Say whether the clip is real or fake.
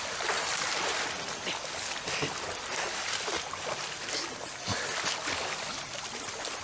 real